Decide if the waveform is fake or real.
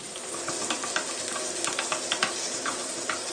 real